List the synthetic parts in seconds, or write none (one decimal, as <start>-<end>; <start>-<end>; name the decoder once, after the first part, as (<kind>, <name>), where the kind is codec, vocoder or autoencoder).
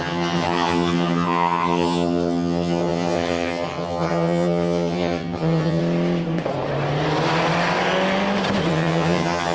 0.0-5.8 (vocoder, HiFi-GAN); 8.7-9.5